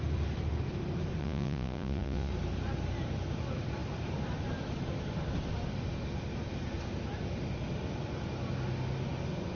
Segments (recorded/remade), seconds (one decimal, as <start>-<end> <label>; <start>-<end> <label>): 0.0-1.2 recorded; 1.2-2.3 remade; 2.3-9.5 recorded

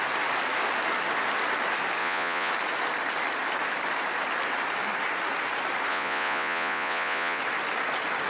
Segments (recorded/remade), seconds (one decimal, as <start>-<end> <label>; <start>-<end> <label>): 0.0-2.0 recorded; 2.0-2.5 remade; 2.5-5.9 recorded; 5.9-7.4 remade; 7.4-8.3 recorded

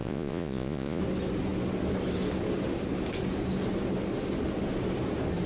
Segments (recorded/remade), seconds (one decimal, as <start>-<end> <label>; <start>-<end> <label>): 0.0-1.0 remade; 1.0-5.5 recorded